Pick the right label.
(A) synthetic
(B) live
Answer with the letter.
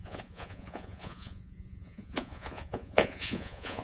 A